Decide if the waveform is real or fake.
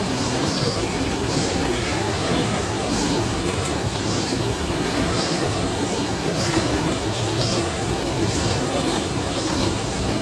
fake